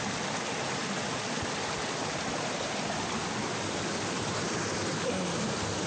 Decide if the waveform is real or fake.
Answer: real